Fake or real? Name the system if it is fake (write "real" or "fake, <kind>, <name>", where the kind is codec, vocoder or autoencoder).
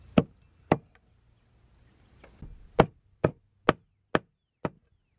real